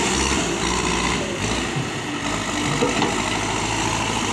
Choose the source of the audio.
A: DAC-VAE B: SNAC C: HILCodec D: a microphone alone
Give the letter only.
D